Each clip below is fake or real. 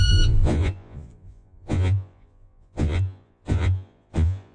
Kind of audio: fake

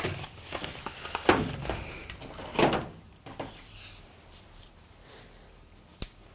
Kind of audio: real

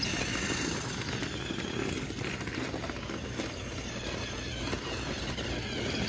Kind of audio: real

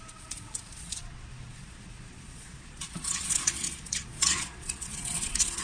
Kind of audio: fake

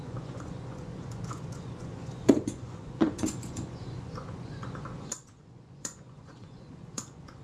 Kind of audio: fake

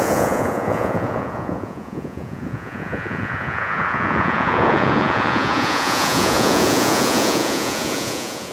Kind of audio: fake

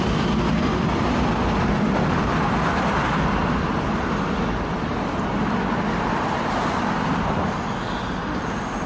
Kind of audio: real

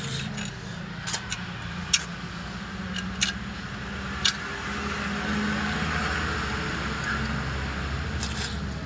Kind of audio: real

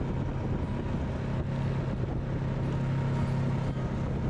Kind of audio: real